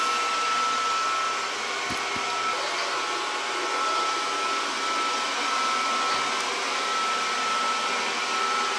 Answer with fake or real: real